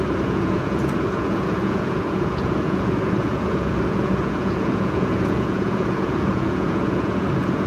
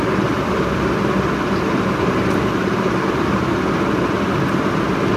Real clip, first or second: second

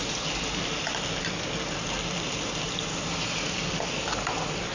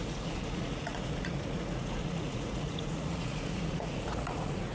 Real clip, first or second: first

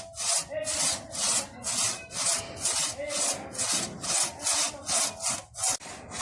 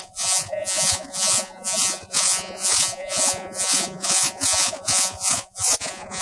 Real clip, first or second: first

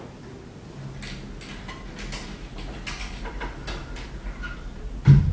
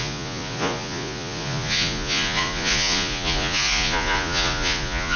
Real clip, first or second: first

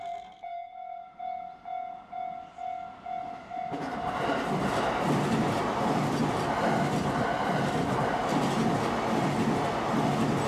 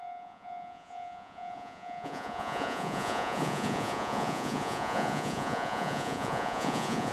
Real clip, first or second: first